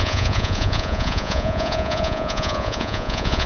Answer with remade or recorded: remade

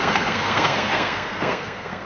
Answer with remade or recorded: remade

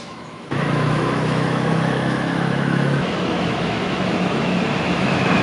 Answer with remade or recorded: remade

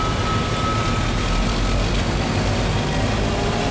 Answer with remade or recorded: recorded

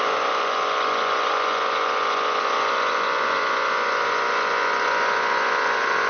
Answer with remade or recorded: remade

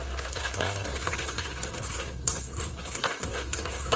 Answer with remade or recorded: remade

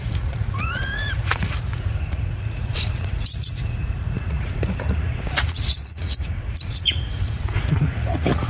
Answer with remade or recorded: remade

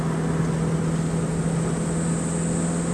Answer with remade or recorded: recorded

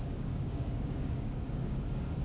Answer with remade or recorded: remade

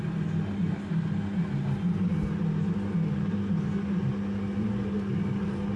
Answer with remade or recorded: recorded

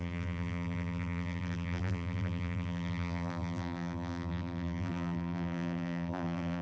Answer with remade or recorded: remade